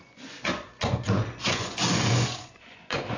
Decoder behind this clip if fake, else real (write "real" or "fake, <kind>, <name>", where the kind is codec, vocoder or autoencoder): fake, vocoder, Vocos